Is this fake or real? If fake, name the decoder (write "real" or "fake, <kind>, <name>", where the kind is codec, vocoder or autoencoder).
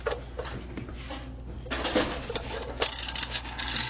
real